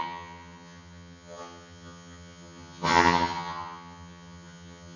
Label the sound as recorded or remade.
remade